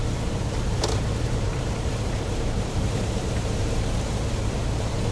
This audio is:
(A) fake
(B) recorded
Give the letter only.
A